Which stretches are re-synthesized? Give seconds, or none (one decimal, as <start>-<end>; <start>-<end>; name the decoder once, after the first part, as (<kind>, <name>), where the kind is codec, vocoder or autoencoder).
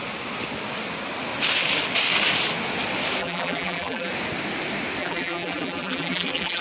3.2-4.1 (vocoder, BigVGAN v2); 5.0-6.6